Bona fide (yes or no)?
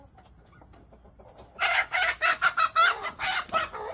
yes